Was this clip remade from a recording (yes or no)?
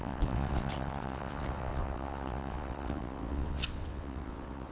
yes